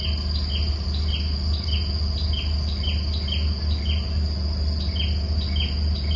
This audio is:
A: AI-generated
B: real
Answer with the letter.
B